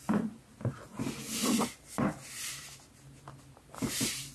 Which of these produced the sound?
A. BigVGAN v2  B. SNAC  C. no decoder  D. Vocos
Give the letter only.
C